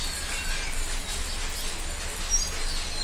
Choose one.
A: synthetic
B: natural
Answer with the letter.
B